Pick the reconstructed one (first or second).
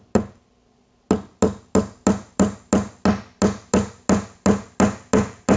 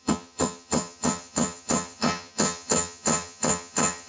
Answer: second